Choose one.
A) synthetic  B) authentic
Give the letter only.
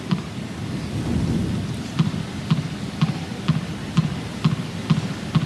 B